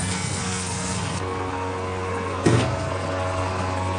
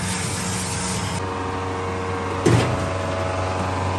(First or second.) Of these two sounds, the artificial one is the first